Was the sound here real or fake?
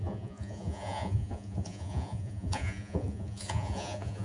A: fake